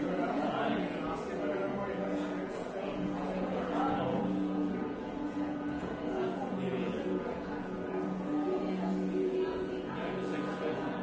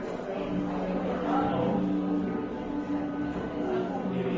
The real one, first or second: second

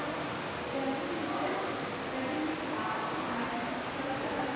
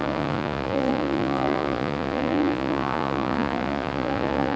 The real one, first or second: first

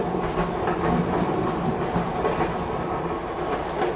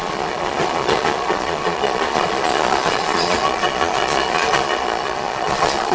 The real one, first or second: first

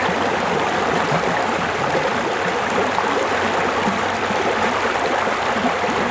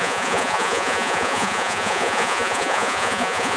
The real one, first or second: first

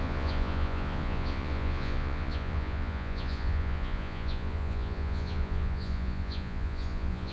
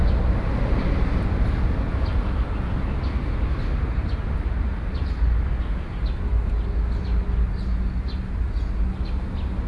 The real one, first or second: second